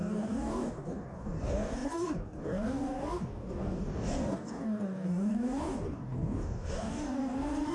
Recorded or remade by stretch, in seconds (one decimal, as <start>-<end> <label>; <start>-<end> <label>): 0.0-7.7 remade